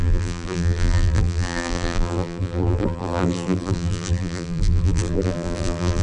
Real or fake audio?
fake